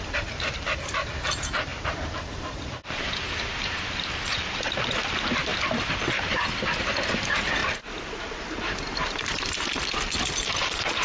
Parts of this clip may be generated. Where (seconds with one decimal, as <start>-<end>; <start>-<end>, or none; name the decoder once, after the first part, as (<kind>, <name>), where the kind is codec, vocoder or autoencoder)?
0.0-5.5 (vocoder, BigVGAN v2); 6.8-7.6; 8.2-9.7; 10.6-11.0